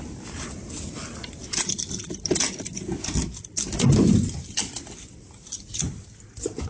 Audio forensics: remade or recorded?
recorded